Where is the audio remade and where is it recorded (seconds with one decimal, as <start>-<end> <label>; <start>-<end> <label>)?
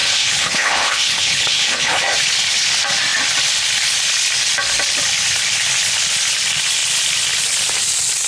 0.0-2.0 remade; 2.0-8.3 recorded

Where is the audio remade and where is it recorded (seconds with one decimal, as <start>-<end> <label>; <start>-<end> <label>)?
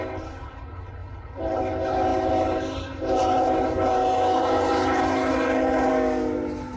0.0-5.9 remade; 5.9-6.8 recorded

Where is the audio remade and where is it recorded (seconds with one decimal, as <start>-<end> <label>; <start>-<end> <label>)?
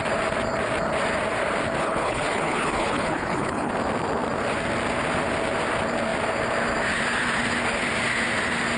0.0-1.8 recorded; 1.8-3.7 remade; 3.7-8.8 recorded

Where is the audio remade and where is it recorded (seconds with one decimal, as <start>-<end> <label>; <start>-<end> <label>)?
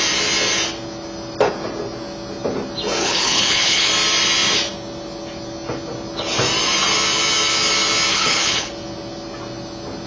0.0-3.0 recorded; 3.0-3.9 remade; 3.9-8.1 recorded; 8.1-8.7 remade; 8.7-10.1 recorded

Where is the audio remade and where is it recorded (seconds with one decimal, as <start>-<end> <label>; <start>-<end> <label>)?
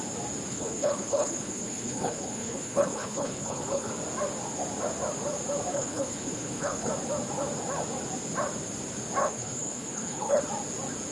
0.0-0.5 recorded; 0.5-3.9 remade; 3.9-5.7 recorded; 5.7-6.9 remade; 6.9-9.2 recorded; 9.2-10.4 remade; 10.4-11.1 recorded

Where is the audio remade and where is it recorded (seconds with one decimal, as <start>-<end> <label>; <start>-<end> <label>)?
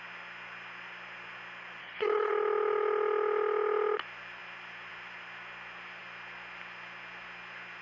0.0-1.8 recorded; 1.8-2.3 remade; 2.3-7.8 recorded